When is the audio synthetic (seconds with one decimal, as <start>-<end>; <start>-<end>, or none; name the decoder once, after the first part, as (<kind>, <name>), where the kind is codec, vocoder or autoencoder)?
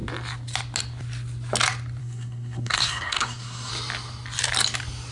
2.0-3.7 (codec, SNAC)